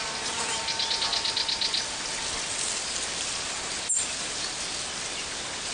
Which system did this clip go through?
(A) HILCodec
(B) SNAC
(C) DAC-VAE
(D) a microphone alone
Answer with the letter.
D